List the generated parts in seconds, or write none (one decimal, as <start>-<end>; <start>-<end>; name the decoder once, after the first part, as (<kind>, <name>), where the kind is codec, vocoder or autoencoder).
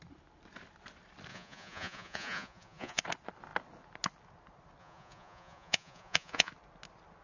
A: 1.3-3.0 (vocoder, Vocos); 4.8-6.5